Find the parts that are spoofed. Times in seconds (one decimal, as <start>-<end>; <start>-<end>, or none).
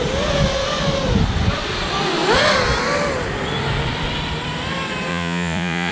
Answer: 5.1-5.9